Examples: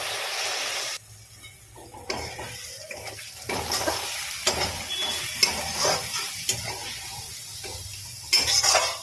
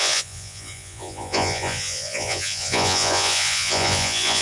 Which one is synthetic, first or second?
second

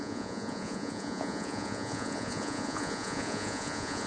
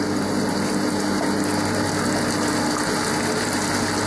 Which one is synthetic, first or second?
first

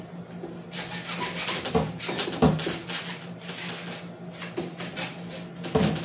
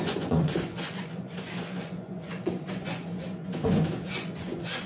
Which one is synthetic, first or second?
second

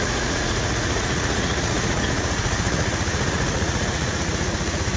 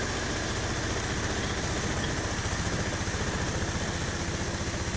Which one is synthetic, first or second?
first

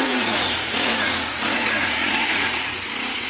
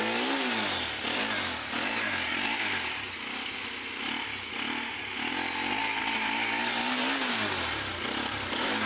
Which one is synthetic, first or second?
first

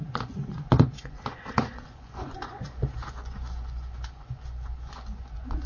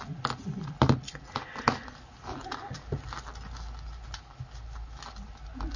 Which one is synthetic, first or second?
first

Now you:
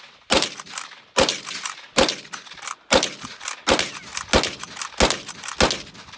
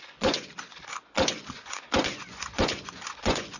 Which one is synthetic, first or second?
second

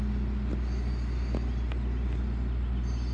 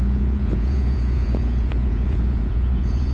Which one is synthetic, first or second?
second